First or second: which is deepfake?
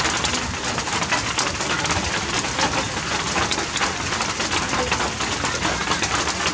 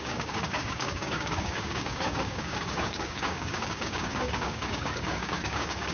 second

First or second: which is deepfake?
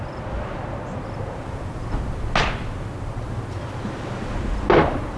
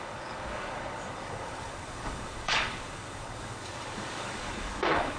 second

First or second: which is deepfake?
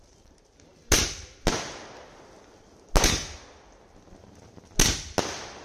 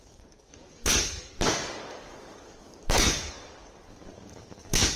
second